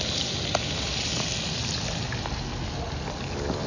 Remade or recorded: recorded